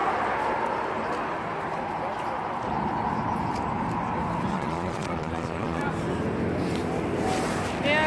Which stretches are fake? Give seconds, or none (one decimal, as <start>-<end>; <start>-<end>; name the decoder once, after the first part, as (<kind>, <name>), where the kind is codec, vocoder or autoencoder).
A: 4.5-5.8 (vocoder, Vocos)